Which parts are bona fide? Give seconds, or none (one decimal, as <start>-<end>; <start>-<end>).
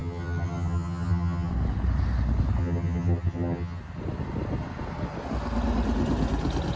1.5-2.6; 3.8-6.8